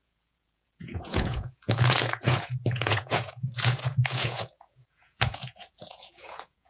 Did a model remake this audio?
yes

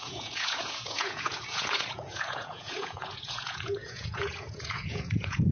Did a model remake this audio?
yes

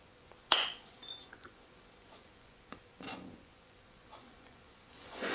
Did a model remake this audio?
yes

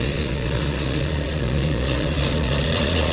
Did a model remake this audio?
yes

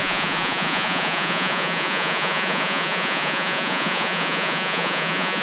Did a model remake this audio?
yes